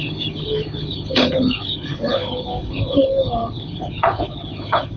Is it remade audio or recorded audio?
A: remade